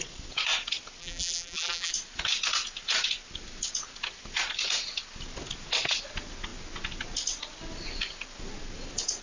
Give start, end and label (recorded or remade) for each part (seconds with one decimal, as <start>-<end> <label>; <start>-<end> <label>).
0.0-1.0 recorded; 1.0-1.9 remade; 1.9-9.2 recorded